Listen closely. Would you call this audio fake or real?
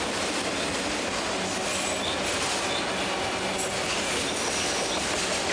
real